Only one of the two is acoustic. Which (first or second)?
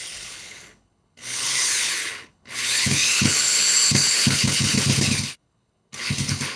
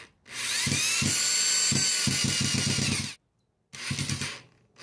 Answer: second